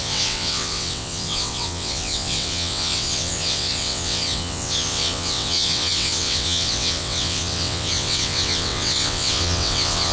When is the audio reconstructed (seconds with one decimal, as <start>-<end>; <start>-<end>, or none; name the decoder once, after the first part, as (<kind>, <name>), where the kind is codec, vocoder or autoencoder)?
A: 0.0-10.1 (vocoder, WaveNeXt)